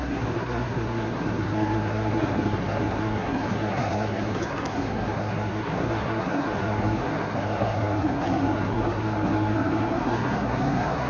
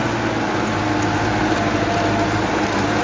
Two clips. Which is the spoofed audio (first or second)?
first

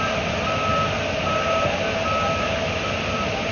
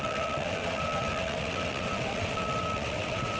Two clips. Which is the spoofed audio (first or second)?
second